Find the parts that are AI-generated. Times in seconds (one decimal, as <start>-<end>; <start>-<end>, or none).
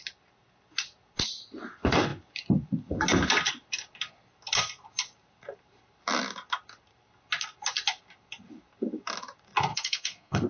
9.7-10.5